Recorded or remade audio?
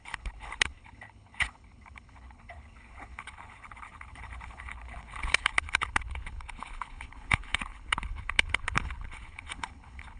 remade